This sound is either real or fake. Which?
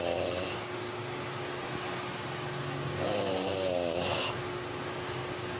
real